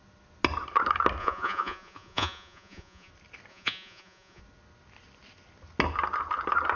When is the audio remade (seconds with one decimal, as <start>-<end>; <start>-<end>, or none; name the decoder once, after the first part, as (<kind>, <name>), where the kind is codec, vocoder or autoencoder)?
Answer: 1.2-3.1 (vocoder, Vocos); 3.5-4.4